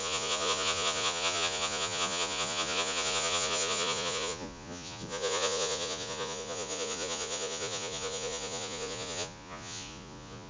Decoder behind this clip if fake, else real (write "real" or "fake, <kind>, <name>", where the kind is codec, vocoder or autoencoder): fake, vocoder, Vocos